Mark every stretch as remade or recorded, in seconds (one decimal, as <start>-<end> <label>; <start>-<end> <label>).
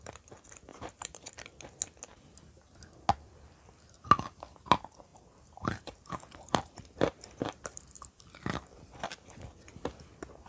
0.0-0.7 recorded; 0.7-1.3 remade; 1.3-5.1 recorded; 5.1-8.2 remade; 8.2-10.5 recorded